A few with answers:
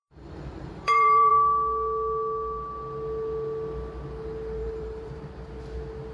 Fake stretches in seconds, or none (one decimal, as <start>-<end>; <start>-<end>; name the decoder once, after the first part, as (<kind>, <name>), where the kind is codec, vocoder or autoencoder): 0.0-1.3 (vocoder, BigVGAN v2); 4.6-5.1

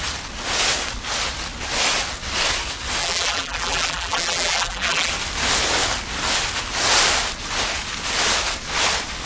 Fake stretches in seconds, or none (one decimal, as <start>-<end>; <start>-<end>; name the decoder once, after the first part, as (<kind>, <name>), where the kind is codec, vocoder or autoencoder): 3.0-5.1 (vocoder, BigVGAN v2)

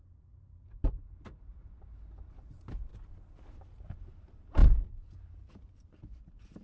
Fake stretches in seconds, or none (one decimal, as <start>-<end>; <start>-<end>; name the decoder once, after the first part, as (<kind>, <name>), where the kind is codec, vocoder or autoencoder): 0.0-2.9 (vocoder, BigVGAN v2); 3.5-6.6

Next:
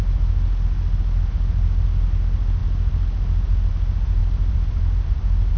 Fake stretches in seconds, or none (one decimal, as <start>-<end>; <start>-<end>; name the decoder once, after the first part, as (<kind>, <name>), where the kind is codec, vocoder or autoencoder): 4.2-5.6 (vocoder, BigVGAN v2)

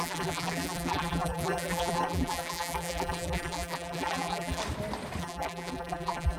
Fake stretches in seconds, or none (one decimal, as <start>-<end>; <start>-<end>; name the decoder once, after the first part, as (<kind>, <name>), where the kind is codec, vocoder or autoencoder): 0.0-4.6 (vocoder, BigVGAN v2); 5.2-6.4

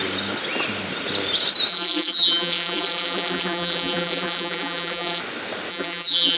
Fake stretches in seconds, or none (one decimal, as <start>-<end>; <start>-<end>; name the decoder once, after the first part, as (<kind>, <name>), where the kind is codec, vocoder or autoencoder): 1.7-5.2 (vocoder, BigVGAN v2); 5.7-6.4